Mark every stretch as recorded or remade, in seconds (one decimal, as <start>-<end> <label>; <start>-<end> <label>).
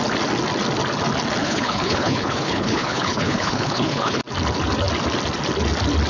0.0-1.4 recorded; 1.4-4.2 remade; 4.2-6.1 recorded